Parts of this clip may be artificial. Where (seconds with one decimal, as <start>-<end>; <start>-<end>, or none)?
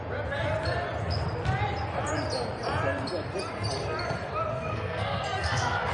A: 4.5-5.9